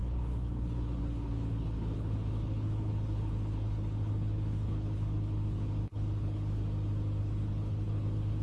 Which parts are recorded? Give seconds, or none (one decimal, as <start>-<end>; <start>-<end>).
6.6-7.2